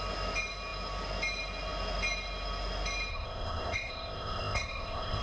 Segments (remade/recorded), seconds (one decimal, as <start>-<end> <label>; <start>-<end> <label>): 0.0-3.1 recorded; 3.1-5.2 remade